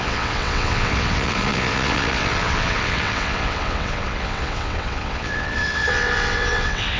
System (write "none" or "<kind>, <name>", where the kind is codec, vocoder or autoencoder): vocoder, WaveNeXt